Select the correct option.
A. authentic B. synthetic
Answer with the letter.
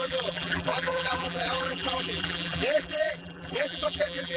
B